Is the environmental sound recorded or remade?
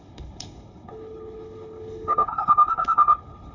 remade